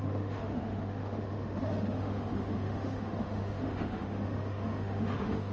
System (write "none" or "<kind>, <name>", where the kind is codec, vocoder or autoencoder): autoencoder, DAC-VAE